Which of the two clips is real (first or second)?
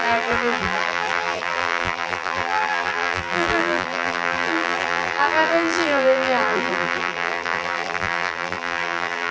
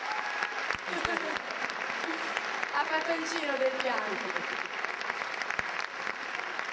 second